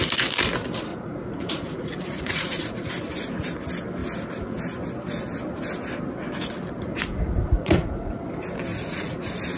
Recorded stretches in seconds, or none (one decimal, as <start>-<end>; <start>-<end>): 0.0-0.9; 2.9-6.9; 8.2-8.7; 9.2-9.6